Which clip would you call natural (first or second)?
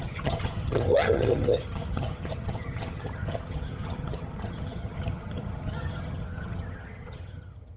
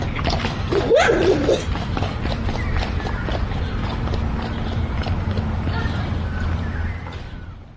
second